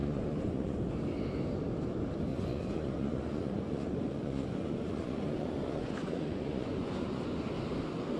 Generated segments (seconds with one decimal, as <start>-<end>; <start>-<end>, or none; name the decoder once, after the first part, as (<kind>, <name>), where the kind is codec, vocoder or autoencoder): 0.0-0.8 (vocoder, Vocos); 2.3-7.2

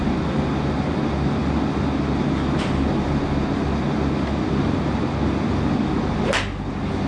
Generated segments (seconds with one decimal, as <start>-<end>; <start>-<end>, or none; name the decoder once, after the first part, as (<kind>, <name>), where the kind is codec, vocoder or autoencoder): none

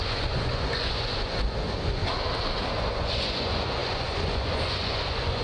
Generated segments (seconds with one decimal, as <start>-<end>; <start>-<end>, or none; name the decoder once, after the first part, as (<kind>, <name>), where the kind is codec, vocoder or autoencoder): 0.0-2.0 (vocoder, Vocos); 2.7-5.4

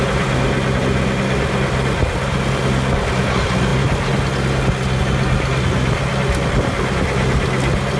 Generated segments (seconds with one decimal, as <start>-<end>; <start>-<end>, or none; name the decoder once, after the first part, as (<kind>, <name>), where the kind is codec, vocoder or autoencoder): none